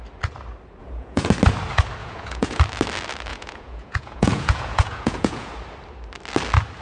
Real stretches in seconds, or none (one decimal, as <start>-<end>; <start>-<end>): 0.0-0.8; 1.3-2.0; 2.6-3.3; 5.5-6.8